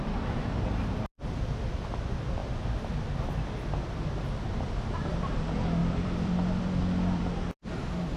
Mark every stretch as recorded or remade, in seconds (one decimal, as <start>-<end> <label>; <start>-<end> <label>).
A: 0.0-5.8 recorded; 5.8-7.6 remade; 7.6-8.2 recorded